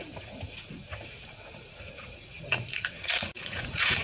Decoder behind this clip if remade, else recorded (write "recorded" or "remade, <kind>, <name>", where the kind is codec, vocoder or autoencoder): remade, vocoder, Vocos